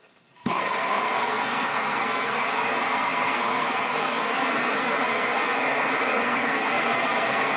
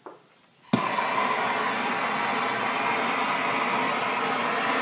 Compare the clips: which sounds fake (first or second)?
first